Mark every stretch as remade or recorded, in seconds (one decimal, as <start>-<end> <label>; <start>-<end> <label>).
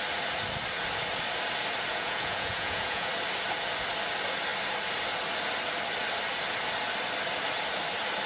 0.0-1.9 recorded; 1.9-3.1 remade; 3.1-8.3 recorded